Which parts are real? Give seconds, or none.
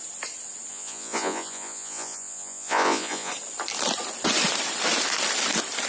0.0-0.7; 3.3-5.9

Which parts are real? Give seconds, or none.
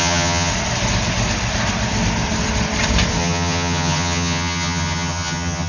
0.5-3.2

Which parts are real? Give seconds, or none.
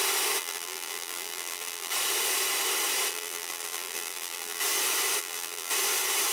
0.0-0.4; 1.9-3.1; 4.6-5.2; 5.7-6.3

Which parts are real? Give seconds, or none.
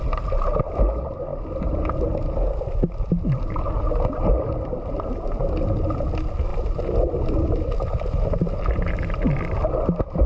0.0-1.3; 3.1-6.5; 9.1-10.3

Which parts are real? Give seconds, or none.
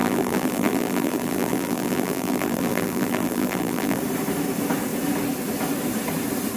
4.0-6.6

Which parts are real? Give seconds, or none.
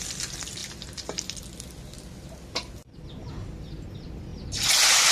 0.0-0.6; 1.4-5.1